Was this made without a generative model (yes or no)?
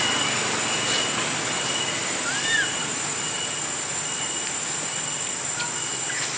yes